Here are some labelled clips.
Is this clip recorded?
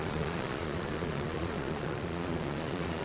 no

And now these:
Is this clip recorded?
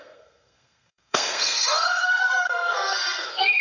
no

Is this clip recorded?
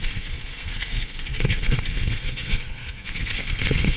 no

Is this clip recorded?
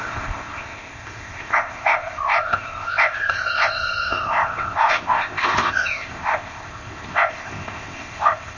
no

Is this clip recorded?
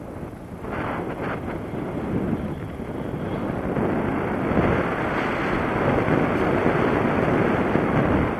yes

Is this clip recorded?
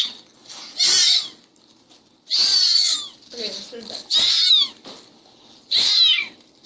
yes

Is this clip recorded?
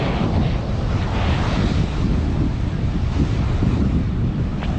yes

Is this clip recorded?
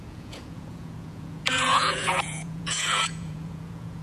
no